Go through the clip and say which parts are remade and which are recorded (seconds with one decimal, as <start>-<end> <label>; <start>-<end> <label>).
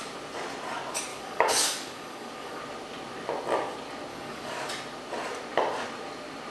0.0-1.1 recorded; 1.1-2.6 remade; 2.6-4.1 recorded; 4.1-4.7 remade; 4.7-6.5 recorded